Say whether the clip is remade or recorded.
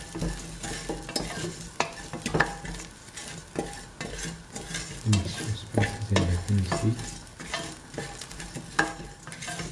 recorded